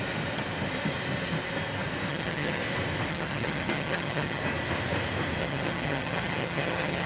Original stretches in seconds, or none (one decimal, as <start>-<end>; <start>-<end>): 0.0-2.1; 2.6-3.1; 4.4-5.4